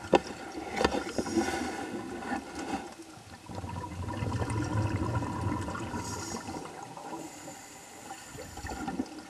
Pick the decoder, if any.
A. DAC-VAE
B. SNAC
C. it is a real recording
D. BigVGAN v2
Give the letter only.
C